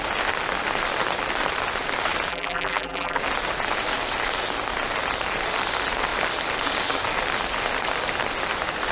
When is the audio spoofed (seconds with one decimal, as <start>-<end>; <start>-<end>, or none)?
2.3-3.2